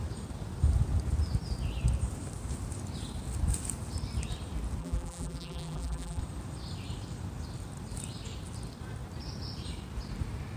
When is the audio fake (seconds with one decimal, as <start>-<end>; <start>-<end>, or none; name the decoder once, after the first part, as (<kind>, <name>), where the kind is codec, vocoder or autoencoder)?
4.8-6.2 (vocoder, BigVGAN v2)